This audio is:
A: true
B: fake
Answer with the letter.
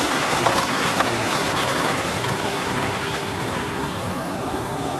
B